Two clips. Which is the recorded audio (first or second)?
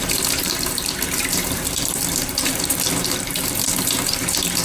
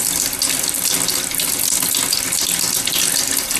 second